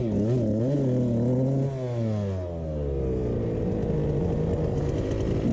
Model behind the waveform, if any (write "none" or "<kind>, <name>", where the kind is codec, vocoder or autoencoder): none